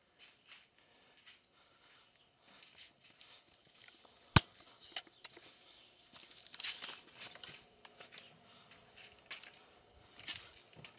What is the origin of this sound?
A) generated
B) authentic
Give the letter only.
B